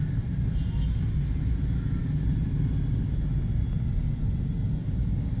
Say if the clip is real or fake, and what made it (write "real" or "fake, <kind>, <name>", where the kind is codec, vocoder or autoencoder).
real